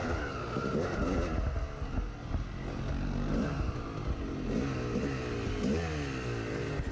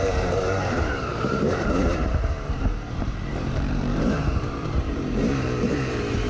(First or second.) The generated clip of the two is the second